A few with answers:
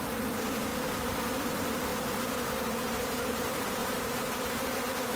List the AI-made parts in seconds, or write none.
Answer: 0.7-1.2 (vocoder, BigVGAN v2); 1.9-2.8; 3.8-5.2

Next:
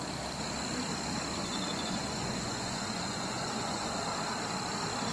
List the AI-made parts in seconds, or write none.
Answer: 1.4-4.0 (vocoder, Vocos)

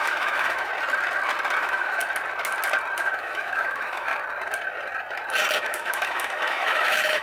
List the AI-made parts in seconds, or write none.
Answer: 0.0-0.7 (autoencoder, DAC-VAE); 1.6-2.0; 3.0-4.1; 5.6-7.2

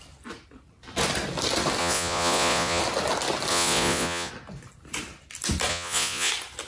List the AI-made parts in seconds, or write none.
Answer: 1.8-2.8 (vocoder, Vocos); 3.5-4.3; 5.7-6.3

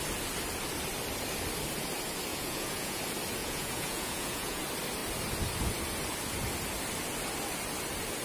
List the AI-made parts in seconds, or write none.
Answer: 2.3-3.0 (vocoder, Vocos); 3.4-4.6

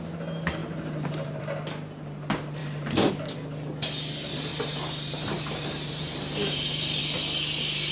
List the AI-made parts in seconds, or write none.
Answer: 0.6-1.4 (vocoder, BigVGAN v2); 2.6-3.1; 4.5-7.0